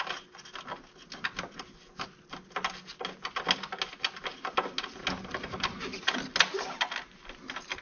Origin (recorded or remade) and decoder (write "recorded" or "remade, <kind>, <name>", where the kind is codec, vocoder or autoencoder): recorded